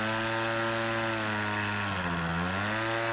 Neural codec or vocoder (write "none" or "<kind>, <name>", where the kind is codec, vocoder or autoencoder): none